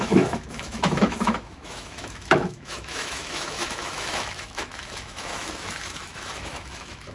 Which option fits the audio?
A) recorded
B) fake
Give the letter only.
B